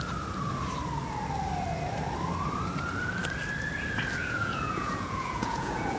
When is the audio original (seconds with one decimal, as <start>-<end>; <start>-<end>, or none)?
0.0-4.2